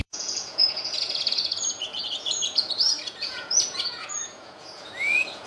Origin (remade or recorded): remade